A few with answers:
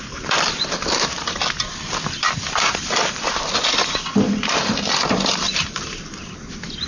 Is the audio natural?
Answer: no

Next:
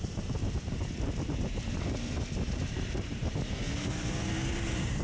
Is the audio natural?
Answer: no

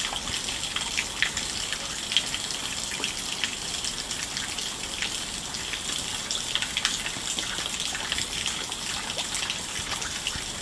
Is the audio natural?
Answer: yes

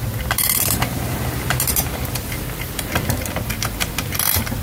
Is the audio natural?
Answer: no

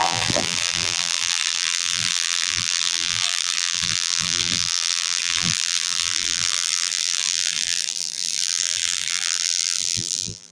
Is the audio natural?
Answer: no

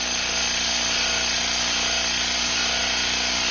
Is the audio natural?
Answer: yes